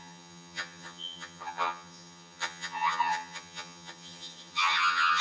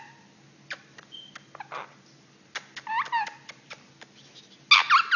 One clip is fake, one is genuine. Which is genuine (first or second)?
second